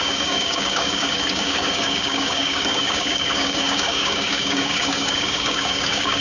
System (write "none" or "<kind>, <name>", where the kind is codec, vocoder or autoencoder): codec, DAC